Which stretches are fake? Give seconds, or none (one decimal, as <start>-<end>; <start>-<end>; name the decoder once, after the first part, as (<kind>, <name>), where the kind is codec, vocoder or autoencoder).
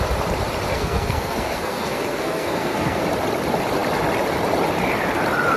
0.7-3.0 (codec, SNAC)